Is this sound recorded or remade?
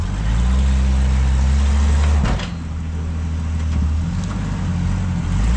recorded